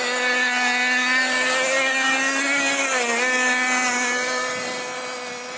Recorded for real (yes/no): yes